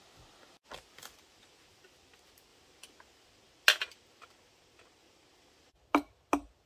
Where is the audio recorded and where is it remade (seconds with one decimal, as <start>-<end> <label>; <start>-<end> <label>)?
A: 0.0-6.7 recorded